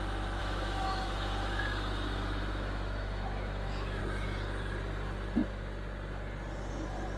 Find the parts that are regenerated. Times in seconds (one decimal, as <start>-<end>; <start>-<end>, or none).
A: 0.4-4.0